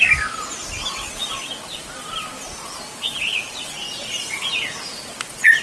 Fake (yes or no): no